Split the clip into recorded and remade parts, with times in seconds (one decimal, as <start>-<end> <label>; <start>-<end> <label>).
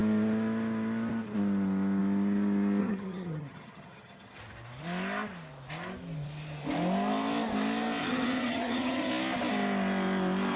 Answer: 0.0-2.8 recorded; 2.8-4.4 remade; 4.4-8.0 recorded; 8.0-9.1 remade; 9.1-10.6 recorded